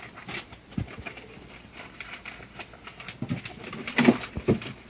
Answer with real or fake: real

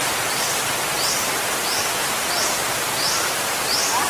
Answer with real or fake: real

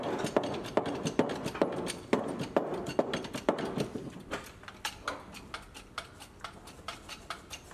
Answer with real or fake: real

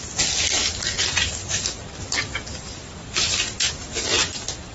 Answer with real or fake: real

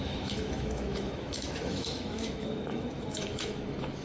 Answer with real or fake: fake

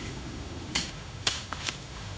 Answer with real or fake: fake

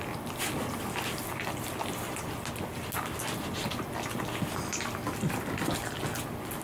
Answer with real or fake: real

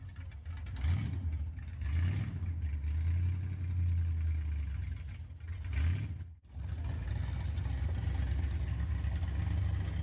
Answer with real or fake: real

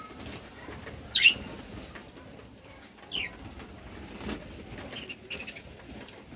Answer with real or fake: real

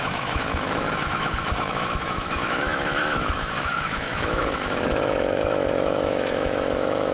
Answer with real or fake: fake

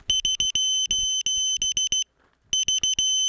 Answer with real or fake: real